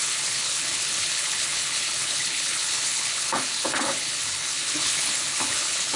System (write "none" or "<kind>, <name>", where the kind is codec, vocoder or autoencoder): codec, HILCodec